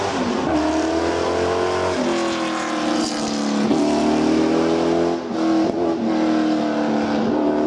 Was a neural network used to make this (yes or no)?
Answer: no